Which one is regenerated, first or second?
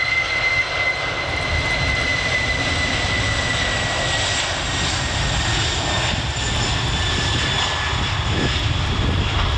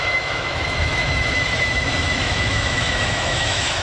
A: second